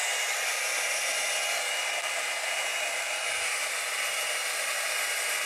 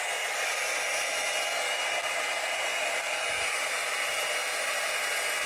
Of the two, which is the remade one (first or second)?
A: first